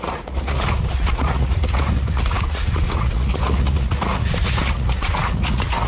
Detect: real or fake fake